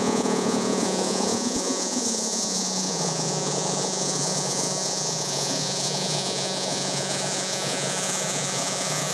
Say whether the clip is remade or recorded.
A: remade